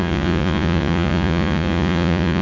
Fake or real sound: fake